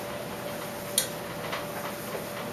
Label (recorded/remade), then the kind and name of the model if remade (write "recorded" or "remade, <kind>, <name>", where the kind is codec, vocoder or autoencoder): recorded